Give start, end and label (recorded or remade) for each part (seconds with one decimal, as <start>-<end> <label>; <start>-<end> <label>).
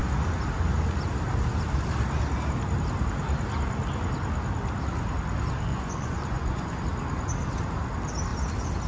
0.0-5.7 recorded; 5.7-6.8 remade; 6.8-8.9 recorded